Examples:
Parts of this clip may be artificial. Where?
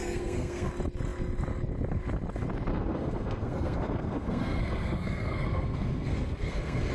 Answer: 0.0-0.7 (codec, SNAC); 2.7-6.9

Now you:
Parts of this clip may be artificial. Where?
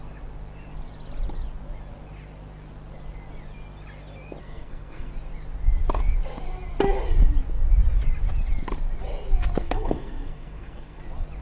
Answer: 4.4-5.1 (codec, SNAC); 9.6-11.0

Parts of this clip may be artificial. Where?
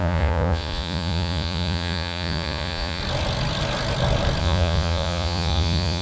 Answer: 0.0-3.0 (vocoder, Vocos); 4.4-6.0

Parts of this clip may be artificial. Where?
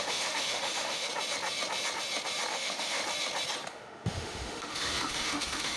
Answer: 0.0-1.1 (autoencoder, DAC-VAE); 2.5-3.0; 3.7-5.8